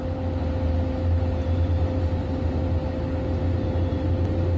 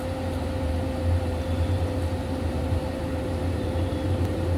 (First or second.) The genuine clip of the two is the first